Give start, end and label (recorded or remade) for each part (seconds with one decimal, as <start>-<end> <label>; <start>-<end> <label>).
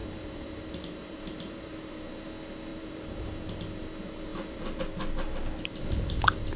0.0-2.1 remade; 2.1-2.7 recorded; 2.7-3.3 remade; 3.3-6.6 recorded